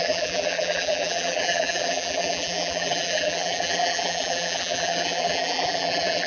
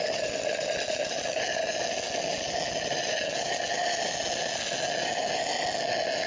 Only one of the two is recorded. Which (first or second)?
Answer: second